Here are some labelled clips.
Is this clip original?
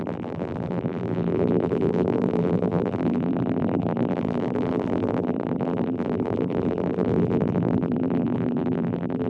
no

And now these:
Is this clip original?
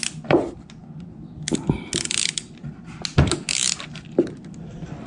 yes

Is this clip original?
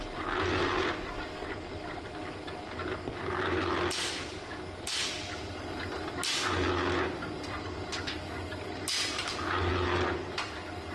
yes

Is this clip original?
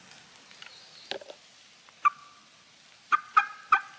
yes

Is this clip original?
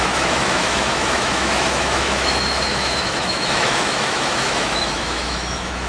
no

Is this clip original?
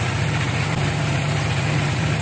no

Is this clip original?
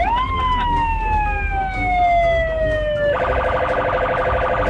yes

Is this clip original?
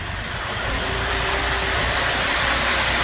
no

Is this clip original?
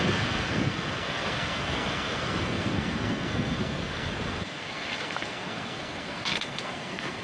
no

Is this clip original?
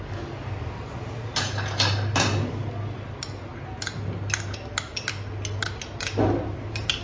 yes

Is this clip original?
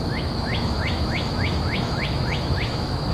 no